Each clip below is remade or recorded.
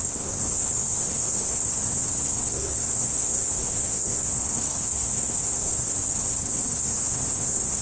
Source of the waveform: remade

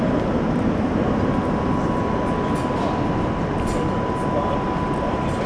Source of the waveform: recorded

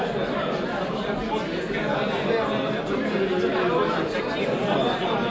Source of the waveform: recorded